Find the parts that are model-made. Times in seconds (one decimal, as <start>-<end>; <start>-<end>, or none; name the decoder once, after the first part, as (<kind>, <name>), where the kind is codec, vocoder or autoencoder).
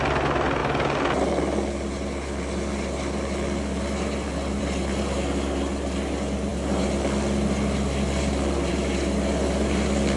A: none